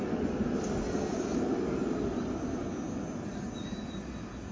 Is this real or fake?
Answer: real